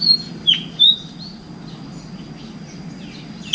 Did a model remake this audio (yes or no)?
no